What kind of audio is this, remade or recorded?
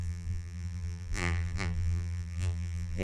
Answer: remade